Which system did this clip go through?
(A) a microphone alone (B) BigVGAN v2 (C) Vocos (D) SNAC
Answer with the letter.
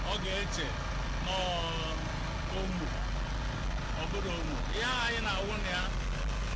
A